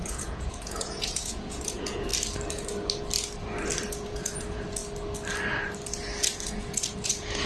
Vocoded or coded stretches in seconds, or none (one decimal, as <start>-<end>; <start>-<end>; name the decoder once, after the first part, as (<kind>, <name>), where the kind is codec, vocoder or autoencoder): 0.0-2.1 (vocoder, Vocos); 3.8-4.8; 6.5-7.5